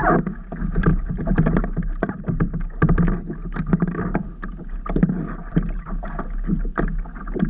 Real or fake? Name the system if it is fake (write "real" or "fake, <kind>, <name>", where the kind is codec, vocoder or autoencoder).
real